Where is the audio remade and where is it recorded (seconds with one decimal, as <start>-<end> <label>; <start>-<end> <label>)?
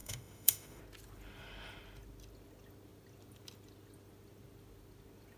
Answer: 0.0-0.8 remade; 0.8-5.4 recorded